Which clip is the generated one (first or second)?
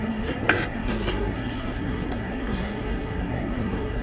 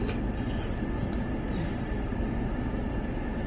first